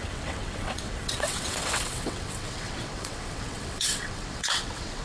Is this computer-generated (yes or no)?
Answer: yes